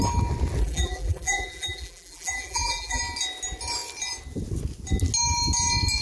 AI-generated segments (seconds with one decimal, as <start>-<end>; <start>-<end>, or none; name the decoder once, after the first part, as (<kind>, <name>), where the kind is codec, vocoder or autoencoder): 0.6-3.0 (vocoder, BigVGAN v2)